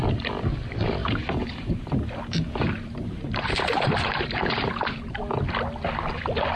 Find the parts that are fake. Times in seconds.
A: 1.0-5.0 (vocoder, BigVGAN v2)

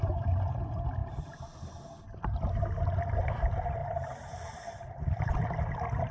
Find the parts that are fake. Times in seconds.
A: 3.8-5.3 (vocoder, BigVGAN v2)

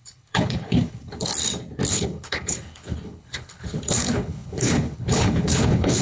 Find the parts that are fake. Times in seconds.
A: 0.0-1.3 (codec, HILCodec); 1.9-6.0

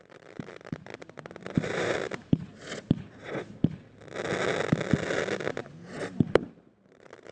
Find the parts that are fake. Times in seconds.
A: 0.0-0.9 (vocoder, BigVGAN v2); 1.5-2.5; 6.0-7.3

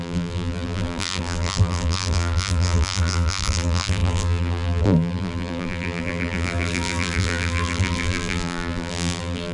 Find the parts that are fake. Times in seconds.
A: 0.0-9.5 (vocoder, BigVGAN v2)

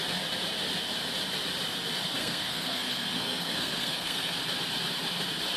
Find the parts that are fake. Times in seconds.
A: 2.2-4.4 (codec, SNAC)

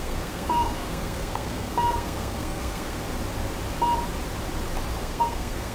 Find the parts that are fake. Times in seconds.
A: 0.0-3.0 (codec, SNAC); 5.0-5.7